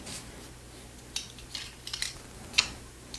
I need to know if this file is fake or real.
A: real